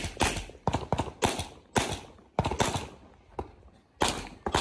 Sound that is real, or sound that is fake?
real